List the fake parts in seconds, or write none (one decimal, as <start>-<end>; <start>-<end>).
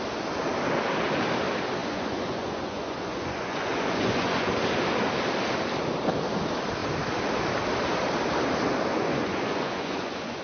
1.8-4.5; 8.9-10.4